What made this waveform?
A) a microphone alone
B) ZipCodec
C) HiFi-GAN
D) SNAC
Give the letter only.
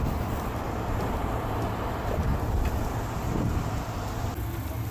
A